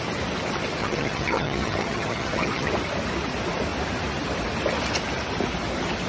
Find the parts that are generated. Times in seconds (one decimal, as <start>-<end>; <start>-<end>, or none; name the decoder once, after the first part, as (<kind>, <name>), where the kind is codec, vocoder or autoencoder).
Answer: 0.8-2.7 (vocoder, HiFi-GAN)